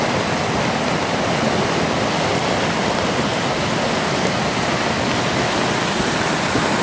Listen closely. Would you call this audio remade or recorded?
recorded